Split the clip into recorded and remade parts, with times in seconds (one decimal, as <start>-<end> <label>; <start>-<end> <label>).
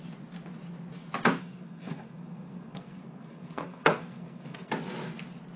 0.0-1.4 recorded; 1.4-4.7 remade; 4.7-5.6 recorded